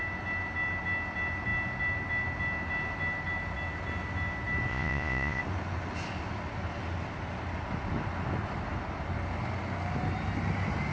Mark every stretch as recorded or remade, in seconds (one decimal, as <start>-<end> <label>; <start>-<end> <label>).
0.0-4.7 recorded; 4.7-5.4 remade; 5.4-10.9 recorded